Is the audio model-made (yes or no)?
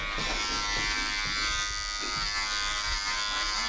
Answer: no